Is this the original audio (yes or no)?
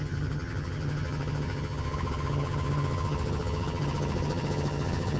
no